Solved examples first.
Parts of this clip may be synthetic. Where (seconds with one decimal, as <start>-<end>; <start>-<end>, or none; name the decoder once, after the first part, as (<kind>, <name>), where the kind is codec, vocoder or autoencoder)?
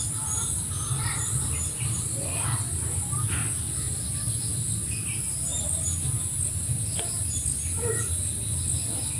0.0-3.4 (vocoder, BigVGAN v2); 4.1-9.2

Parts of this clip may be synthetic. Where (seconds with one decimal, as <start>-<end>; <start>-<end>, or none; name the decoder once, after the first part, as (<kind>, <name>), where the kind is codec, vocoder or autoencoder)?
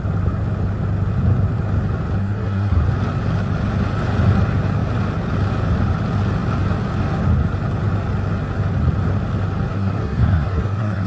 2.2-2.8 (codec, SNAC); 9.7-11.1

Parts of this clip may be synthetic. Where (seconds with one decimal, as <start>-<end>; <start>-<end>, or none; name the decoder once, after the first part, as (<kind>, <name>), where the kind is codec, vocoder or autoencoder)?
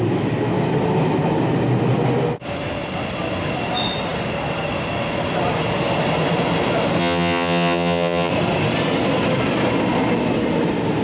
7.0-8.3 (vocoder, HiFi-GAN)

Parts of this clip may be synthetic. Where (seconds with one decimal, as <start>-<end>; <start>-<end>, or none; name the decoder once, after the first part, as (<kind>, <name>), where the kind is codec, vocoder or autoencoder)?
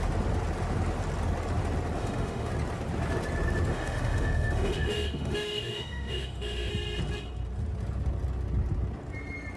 2.0-2.5 (autoencoder, DAC-VAE); 3.7-6.7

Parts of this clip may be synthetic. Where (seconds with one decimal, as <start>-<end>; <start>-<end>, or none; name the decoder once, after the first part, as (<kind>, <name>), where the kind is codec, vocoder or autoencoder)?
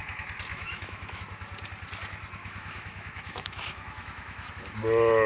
0.5-1.2 (autoencoder, DAC-VAE); 2.4-4.5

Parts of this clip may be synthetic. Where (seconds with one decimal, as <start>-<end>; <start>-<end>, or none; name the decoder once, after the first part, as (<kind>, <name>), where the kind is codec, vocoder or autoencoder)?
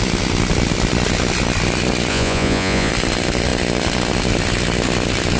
2.1-2.9 (vocoder, Vocos)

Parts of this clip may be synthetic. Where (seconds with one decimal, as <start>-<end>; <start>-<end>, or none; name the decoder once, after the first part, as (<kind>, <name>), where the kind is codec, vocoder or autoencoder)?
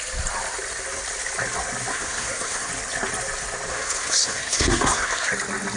1.9-2.7 (codec, SNAC); 3.7-5.3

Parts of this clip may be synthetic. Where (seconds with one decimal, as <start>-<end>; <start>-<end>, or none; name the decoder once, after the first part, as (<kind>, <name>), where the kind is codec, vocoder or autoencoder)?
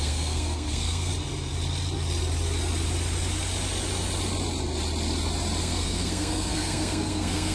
0.0-1.1 (codec, SNAC); 5.6-7.5